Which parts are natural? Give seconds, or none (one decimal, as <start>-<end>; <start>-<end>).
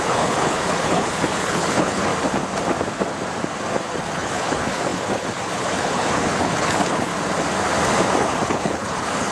2.1-4.0; 7.1-8.2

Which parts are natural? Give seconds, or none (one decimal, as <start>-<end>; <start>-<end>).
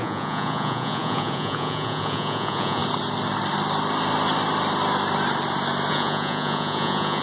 2.8-5.9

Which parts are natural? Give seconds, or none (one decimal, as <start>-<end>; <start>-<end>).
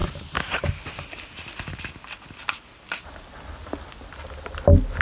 0.0-5.0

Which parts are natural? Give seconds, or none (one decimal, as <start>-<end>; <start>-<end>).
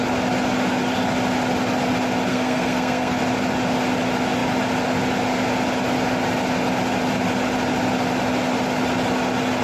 0.0-2.3; 3.2-9.6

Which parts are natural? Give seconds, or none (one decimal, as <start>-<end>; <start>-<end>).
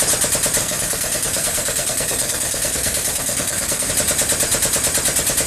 0.0-0.6; 3.9-5.5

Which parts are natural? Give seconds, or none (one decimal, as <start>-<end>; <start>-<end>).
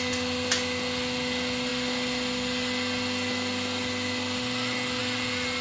0.0-5.6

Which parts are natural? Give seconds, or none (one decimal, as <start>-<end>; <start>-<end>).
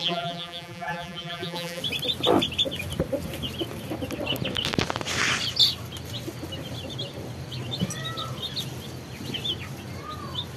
1.8-10.6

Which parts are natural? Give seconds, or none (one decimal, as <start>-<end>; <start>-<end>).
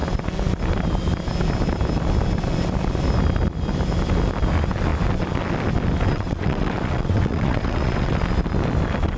0.0-6.1; 8.2-9.2